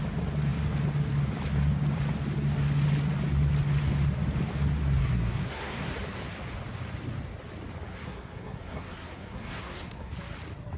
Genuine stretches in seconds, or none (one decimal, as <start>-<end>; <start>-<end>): 0.0-5.0; 5.9-7.9; 10.1-10.8